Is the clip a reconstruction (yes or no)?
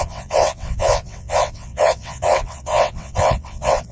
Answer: yes